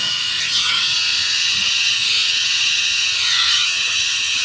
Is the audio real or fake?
fake